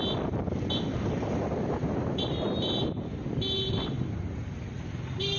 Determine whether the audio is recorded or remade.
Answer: recorded